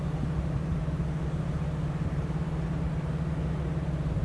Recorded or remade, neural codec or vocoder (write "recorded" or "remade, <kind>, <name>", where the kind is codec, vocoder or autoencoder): recorded